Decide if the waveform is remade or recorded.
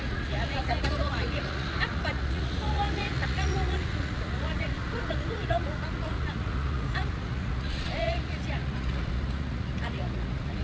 remade